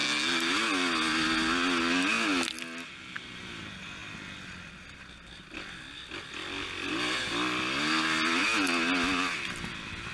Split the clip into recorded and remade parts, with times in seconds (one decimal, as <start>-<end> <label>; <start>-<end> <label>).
0.0-10.1 recorded